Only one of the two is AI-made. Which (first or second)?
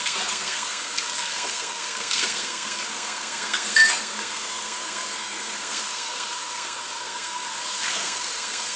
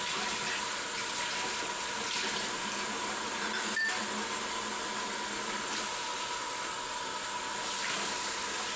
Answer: first